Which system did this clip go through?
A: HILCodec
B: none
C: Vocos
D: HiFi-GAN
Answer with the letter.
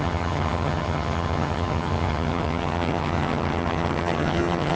D